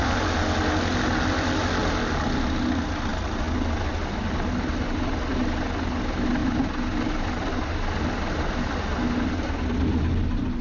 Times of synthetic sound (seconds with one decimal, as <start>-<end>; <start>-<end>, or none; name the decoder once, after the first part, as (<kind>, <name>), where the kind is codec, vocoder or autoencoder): none